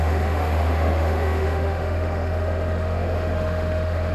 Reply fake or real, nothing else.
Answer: fake